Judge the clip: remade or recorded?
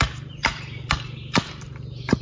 remade